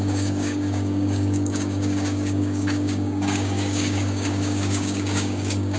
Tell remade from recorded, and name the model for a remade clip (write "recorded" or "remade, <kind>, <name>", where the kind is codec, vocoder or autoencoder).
remade, codec, DAC